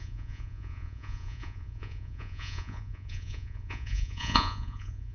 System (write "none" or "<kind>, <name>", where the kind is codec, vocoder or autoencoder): vocoder, Vocos